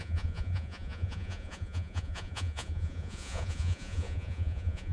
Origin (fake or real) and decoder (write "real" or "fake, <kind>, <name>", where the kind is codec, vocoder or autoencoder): fake, vocoder, Vocos